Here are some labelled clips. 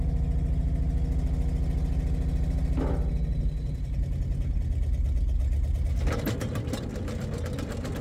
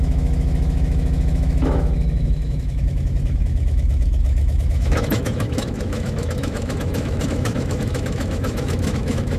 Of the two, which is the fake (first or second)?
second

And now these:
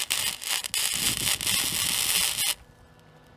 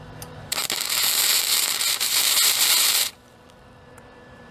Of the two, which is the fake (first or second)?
second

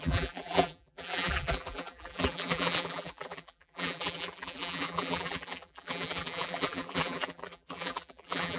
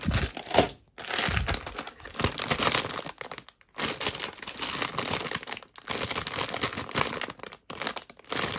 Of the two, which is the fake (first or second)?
first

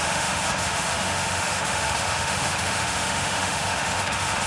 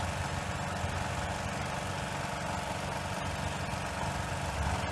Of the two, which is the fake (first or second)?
first